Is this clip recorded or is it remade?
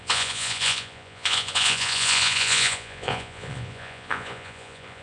remade